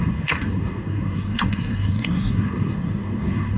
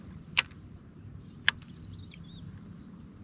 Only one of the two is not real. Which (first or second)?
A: first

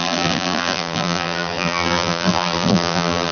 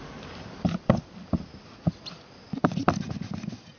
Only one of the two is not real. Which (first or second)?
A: first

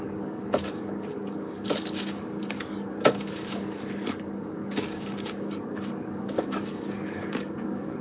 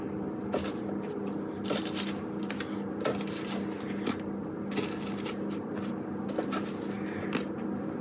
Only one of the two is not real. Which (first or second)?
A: first